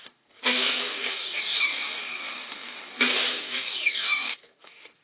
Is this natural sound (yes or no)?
no